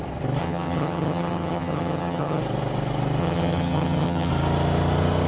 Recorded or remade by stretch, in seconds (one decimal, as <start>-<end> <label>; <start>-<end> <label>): 0.0-0.4 recorded; 0.4-2.4 remade; 2.4-3.2 recorded; 3.2-4.3 remade; 4.3-5.3 recorded